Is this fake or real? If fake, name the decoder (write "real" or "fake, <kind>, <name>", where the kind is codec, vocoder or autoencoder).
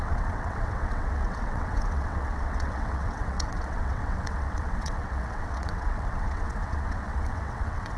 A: fake, vocoder, WaveNeXt